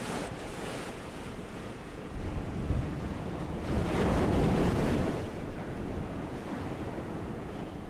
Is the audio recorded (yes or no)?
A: no